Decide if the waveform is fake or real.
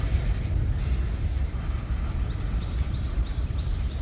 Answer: real